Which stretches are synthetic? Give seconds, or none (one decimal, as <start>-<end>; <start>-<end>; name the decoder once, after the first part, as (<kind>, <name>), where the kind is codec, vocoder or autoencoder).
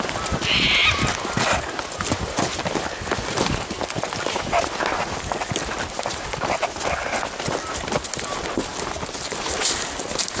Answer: none